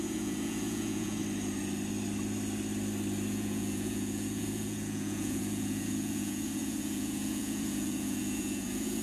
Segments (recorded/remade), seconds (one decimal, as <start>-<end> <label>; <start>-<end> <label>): 0.0-1.2 remade; 1.2-3.3 recorded; 3.3-9.0 remade